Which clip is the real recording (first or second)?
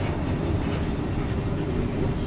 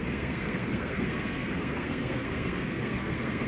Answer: first